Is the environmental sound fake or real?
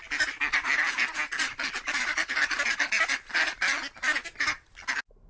real